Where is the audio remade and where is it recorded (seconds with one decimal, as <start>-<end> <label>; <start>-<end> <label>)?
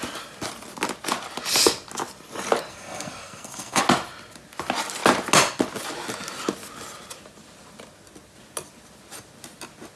0.0-2.7 recorded; 2.7-3.8 remade; 3.8-10.0 recorded